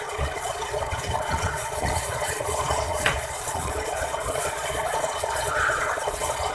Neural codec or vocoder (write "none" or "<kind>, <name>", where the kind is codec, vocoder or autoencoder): vocoder, Vocos